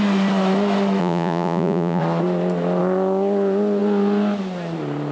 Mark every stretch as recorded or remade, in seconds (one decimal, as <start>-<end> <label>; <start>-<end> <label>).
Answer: 0.0-1.0 recorded; 1.0-2.0 remade; 2.0-5.1 recorded

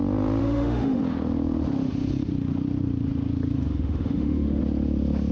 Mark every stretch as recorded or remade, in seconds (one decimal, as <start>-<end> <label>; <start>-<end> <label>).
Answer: 0.0-0.4 recorded; 0.4-1.0 remade; 1.0-3.7 recorded; 3.7-4.6 remade; 4.6-5.3 recorded